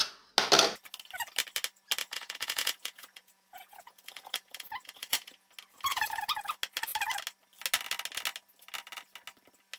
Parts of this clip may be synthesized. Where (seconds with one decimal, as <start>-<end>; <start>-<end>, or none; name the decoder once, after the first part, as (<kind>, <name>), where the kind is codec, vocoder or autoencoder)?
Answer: 2.0-5.5 (vocoder, Vocos); 5.9-6.5